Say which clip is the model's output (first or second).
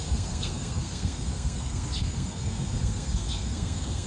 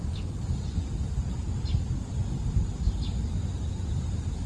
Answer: first